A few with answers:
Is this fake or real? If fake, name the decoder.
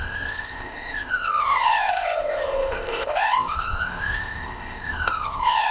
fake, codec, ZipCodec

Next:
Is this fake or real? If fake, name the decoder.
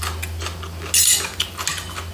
real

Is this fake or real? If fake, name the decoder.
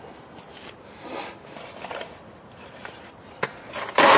fake, vocoder, BigVGAN v2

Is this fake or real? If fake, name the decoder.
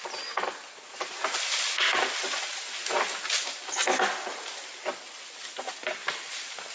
real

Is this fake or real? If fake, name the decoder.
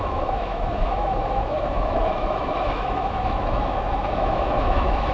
fake, autoencoder, DAC-VAE